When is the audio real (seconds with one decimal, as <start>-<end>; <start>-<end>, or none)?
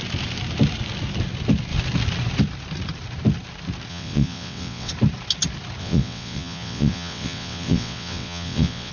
0.0-3.9; 4.9-5.8